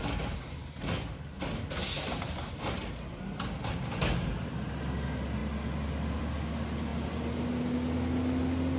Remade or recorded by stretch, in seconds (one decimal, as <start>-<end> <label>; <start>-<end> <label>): 0.0-8.8 recorded